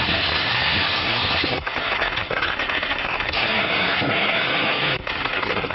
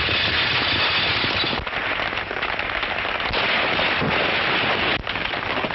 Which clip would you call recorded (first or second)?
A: second